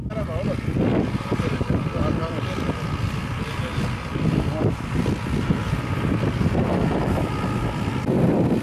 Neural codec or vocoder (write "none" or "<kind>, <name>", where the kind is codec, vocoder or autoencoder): none